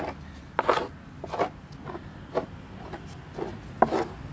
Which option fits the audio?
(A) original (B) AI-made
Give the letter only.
A